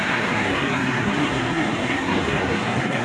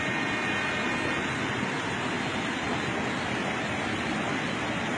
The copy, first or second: first